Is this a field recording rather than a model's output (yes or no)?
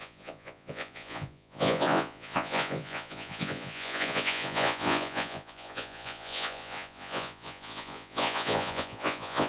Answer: no